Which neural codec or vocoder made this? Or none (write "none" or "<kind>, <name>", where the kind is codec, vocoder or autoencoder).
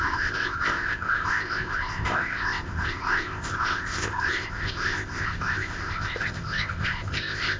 codec, ZipCodec